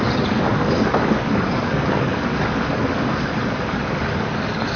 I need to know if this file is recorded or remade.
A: remade